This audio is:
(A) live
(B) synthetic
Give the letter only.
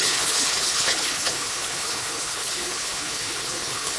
B